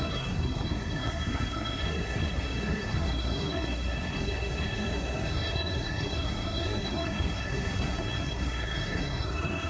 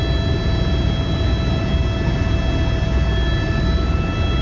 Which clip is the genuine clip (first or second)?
second